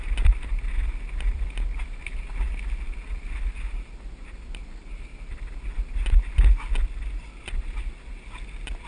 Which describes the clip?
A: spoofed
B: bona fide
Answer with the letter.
B